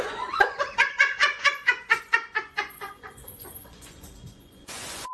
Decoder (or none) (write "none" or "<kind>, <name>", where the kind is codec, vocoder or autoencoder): vocoder, Vocos